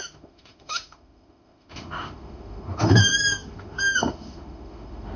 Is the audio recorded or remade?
remade